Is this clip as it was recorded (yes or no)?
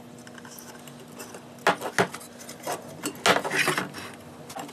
yes